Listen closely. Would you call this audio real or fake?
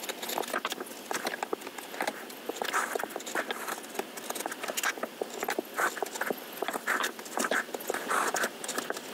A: real